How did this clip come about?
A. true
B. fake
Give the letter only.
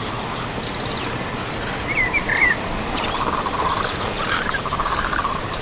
B